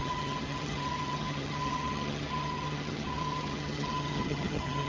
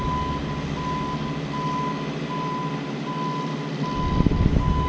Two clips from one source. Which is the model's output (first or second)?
first